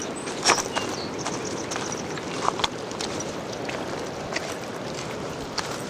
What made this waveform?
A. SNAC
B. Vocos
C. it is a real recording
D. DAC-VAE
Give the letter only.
C